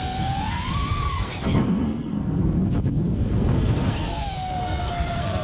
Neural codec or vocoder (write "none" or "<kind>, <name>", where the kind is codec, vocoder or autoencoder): codec, SNAC